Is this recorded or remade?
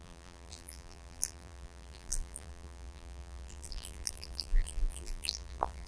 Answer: remade